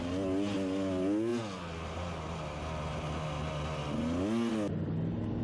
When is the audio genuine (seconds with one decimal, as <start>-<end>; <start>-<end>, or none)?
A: 0.0-5.4